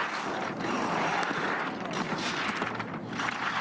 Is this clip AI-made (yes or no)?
no